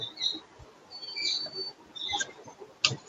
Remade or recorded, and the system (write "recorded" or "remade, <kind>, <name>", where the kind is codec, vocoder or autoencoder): recorded